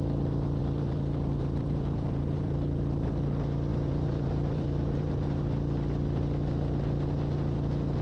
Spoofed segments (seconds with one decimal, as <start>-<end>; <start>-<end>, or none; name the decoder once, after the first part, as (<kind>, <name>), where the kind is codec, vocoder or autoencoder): 0.6-3.1 (vocoder, BigVGAN v2); 3.7-5.4